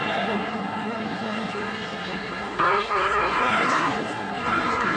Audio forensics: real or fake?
fake